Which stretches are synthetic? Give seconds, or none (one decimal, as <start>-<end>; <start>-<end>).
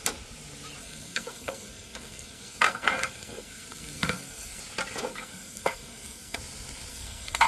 0.8-4.6; 5.1-6.4; 6.9-7.5